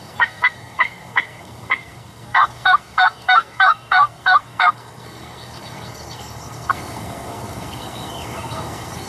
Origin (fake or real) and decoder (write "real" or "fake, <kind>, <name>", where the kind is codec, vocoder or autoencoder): fake, codec, SNAC